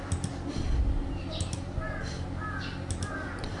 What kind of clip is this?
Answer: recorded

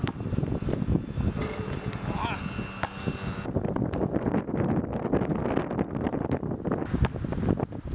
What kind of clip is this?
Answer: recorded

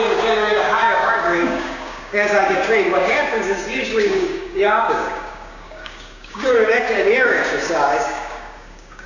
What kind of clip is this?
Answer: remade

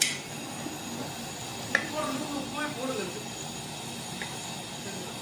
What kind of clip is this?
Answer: recorded